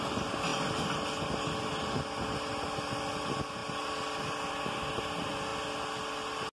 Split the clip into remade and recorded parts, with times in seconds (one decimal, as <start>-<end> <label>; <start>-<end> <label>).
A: 0.0-6.5 recorded